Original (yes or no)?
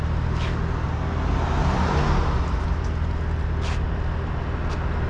yes